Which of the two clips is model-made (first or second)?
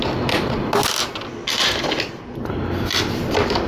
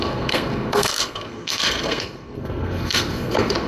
second